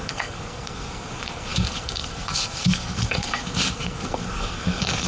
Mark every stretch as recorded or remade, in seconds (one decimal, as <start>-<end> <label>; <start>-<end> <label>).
0.0-5.1 remade